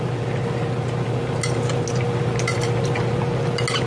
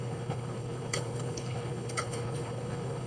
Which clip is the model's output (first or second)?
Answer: second